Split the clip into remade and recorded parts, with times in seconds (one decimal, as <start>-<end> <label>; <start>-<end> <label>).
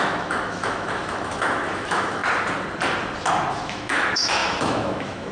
0.0-2.2 remade; 2.2-3.5 recorded; 3.5-5.3 remade